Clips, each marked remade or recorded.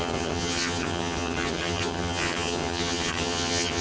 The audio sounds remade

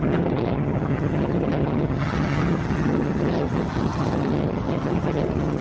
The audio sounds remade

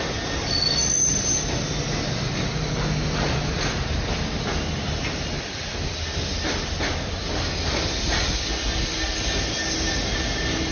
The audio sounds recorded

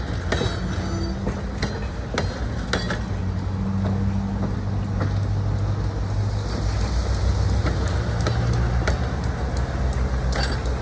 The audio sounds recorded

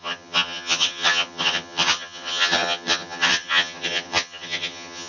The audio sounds remade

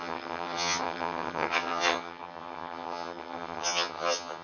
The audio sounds remade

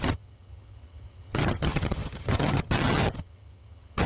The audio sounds remade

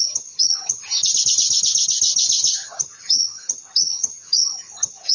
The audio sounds remade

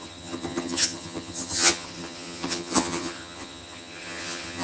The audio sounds remade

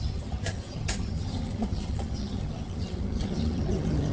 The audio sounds remade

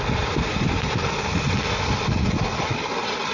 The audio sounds recorded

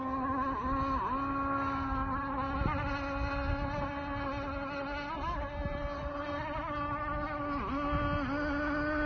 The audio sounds recorded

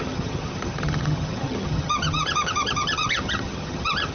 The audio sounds remade